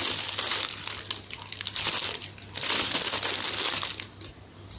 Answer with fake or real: real